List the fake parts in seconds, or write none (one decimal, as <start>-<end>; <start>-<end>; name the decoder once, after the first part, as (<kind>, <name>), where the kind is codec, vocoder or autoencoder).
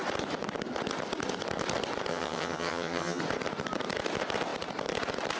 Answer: 2.1-3.2 (vocoder, HiFi-GAN)